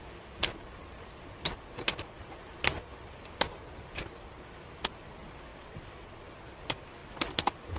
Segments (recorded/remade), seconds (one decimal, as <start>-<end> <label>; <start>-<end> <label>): 0.0-5.5 recorded; 5.5-6.2 remade; 6.2-7.8 recorded